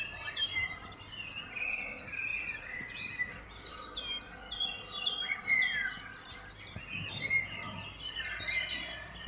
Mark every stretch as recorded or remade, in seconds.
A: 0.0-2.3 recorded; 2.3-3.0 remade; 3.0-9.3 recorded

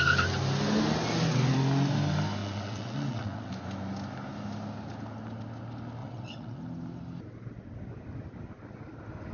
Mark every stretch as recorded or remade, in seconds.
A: 0.0-2.4 recorded; 2.4-3.5 remade; 3.5-6.0 recorded; 6.0-6.6 remade; 6.6-9.3 recorded

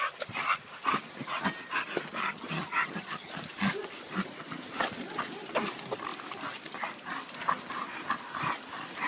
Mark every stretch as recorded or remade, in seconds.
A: 0.0-2.2 recorded; 2.2-3.3 remade; 3.3-9.1 recorded

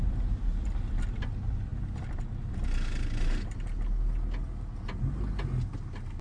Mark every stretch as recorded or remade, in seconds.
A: 0.0-6.2 recorded

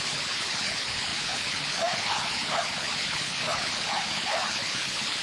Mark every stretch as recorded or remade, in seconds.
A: 0.0-5.2 remade